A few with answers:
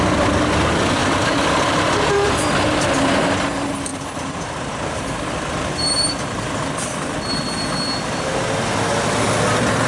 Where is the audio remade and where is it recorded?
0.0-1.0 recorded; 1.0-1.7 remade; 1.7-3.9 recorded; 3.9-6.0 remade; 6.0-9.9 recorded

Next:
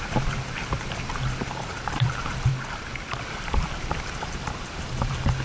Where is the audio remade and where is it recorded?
0.0-2.5 remade; 2.5-3.2 recorded; 3.2-5.4 remade

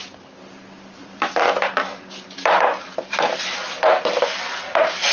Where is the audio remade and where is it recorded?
0.0-1.0 recorded; 1.0-4.1 remade; 4.1-5.1 recorded

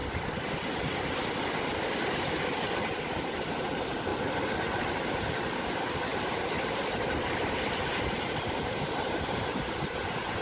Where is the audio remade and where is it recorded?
0.0-3.5 recorded; 3.5-4.1 remade; 4.1-4.6 recorded; 4.6-10.4 remade